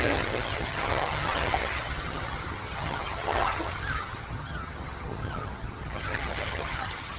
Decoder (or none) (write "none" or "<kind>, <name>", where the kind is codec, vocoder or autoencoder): vocoder, HiFi-GAN